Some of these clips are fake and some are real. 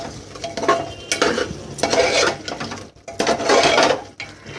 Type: real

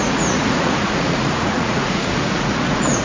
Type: fake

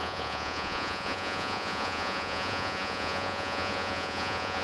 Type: fake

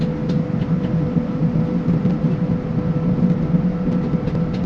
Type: real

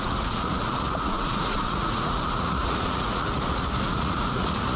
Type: fake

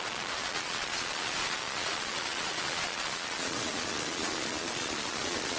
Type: fake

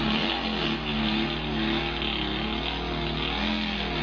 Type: real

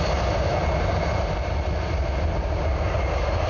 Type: real